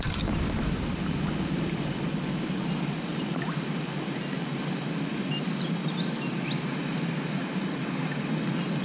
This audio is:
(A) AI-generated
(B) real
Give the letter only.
B